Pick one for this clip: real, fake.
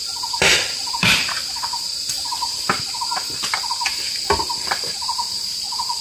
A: fake